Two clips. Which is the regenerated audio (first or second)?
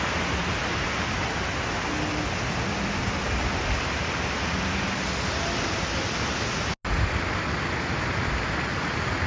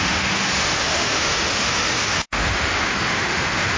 second